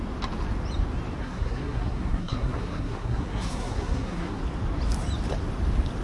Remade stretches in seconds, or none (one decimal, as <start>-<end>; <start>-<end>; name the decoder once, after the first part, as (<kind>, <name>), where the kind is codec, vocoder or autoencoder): 1.2-4.4 (codec, SNAC)